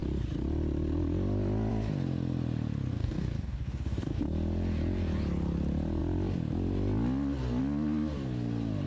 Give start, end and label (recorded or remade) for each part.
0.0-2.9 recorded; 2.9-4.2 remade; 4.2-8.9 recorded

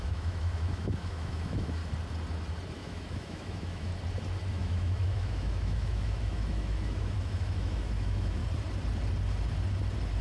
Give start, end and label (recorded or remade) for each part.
0.0-1.8 remade; 1.8-2.8 recorded; 2.8-3.9 remade; 3.9-4.5 recorded; 4.5-8.4 remade; 8.4-10.2 recorded

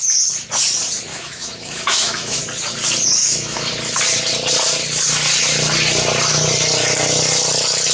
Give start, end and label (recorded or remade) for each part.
0.0-1.1 recorded; 1.1-2.4 remade; 2.4-3.2 recorded; 3.2-3.7 remade; 3.7-7.9 recorded

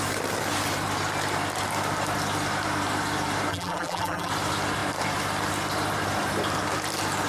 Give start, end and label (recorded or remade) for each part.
0.0-3.5 recorded; 3.5-4.3 remade; 4.3-7.3 recorded

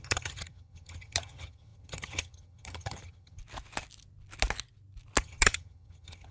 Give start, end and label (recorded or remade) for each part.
0.0-3.4 remade; 3.4-5.2 recorded; 5.2-6.3 remade